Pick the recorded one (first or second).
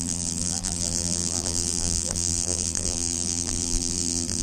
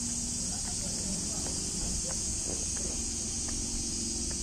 second